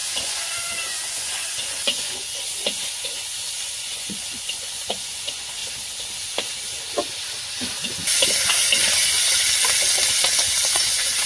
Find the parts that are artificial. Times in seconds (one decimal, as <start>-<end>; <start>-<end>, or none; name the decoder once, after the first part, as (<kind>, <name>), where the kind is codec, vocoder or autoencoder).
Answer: 0.0-5.6 (vocoder, Vocos); 10.7-11.3